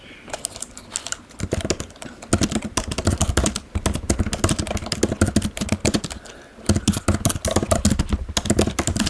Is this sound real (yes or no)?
yes